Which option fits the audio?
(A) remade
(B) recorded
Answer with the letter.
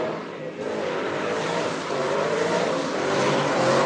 B